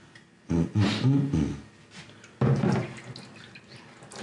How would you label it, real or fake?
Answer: real